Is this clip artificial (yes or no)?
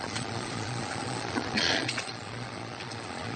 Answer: yes